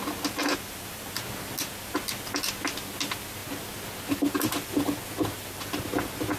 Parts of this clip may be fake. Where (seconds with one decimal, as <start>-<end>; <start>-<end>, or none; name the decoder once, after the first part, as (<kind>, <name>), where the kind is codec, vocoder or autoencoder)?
none